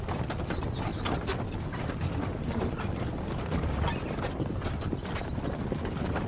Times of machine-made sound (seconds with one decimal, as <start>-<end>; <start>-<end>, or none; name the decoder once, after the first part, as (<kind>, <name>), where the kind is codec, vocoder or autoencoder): none